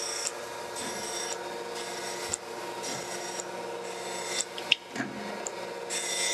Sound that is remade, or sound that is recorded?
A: recorded